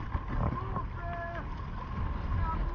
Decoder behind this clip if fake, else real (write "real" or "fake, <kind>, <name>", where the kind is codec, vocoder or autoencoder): real